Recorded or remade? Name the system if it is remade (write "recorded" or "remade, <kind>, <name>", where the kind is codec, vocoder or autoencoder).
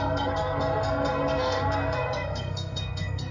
remade, codec, SNAC